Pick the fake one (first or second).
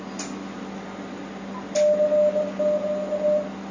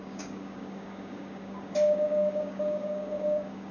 second